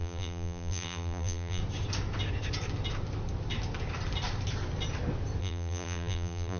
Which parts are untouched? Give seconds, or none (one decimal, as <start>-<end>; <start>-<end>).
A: 1.6-5.4